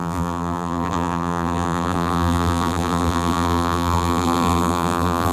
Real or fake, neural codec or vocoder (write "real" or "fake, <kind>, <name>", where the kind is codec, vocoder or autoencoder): fake, vocoder, BigVGAN v2